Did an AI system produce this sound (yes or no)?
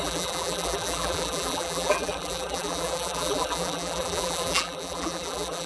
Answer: yes